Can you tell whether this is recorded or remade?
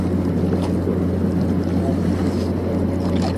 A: recorded